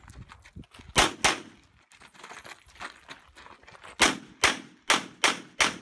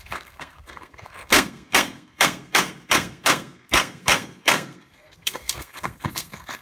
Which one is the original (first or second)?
first